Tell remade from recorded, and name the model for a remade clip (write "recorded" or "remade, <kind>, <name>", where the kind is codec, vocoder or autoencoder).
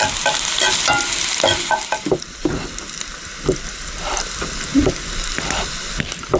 remade, vocoder, BigVGAN v2